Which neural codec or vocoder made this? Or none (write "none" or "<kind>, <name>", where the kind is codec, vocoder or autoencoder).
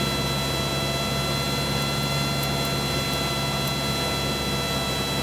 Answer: none